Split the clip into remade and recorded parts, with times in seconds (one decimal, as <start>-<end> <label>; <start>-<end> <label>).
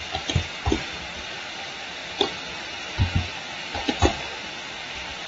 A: 0.0-5.3 recorded